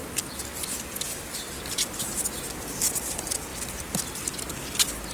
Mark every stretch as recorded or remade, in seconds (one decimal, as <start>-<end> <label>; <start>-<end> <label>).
0.0-5.1 recorded